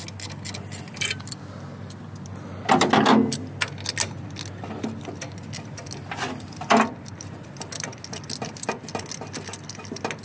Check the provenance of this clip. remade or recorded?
recorded